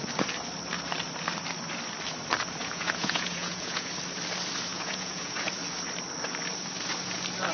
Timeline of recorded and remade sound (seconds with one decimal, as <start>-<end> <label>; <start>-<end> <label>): 0.0-2.6 recorded; 2.6-3.9 remade; 3.9-4.7 recorded; 4.7-5.5 remade; 5.5-7.5 recorded